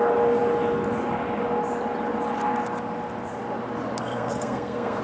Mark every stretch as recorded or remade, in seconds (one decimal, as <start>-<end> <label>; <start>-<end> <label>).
0.0-4.0 recorded; 4.0-5.0 remade